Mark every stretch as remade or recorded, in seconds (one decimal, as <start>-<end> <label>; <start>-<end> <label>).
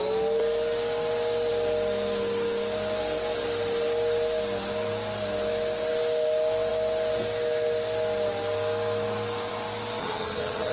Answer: 0.0-10.0 recorded; 10.0-10.7 remade